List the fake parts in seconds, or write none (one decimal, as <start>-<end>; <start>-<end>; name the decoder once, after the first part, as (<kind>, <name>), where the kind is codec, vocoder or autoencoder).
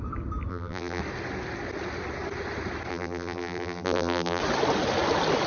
0.5-1.0 (vocoder, BigVGAN v2); 2.9-4.4